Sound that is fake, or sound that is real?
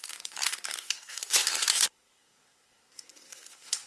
fake